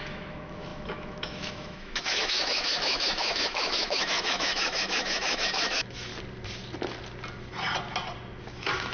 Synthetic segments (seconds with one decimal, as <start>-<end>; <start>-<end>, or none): 0.0-6.1; 8.4-8.9